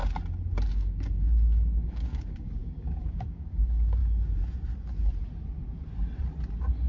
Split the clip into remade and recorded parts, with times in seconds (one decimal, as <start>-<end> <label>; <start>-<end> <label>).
0.0-0.7 recorded; 0.7-4.0 remade; 4.0-6.9 recorded